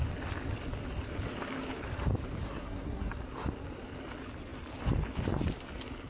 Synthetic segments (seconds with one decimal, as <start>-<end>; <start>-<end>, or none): 2.4-3.1